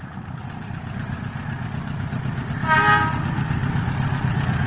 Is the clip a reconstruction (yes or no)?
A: no